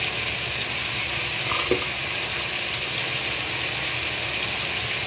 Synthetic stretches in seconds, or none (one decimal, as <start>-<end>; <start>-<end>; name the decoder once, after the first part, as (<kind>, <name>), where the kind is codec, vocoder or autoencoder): none

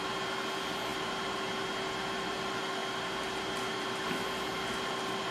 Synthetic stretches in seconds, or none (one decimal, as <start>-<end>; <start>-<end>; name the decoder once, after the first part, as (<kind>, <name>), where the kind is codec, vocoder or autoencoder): none

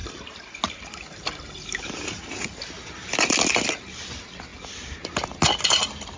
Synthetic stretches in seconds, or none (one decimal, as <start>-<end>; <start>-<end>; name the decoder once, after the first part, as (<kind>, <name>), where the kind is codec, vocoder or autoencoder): none

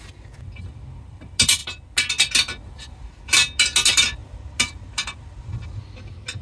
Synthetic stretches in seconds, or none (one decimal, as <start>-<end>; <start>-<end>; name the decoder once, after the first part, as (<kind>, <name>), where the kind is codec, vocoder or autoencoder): none

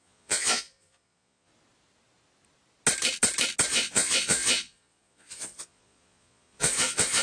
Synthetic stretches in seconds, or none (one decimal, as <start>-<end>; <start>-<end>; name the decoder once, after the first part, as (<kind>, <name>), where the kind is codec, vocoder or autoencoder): 0.0-1.5 (vocoder, Vocos); 3.7-7.2